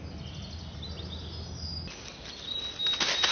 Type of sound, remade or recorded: recorded